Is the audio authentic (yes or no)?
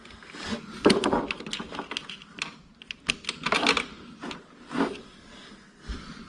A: yes